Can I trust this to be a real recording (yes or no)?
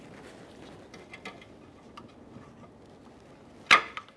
yes